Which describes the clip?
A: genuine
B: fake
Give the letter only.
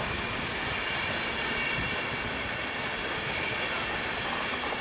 A